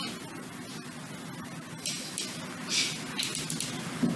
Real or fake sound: real